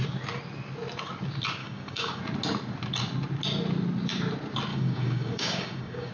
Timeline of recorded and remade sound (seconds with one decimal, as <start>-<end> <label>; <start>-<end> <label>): 0.0-1.6 recorded; 1.6-2.2 remade; 2.2-4.7 recorded; 4.7-6.1 remade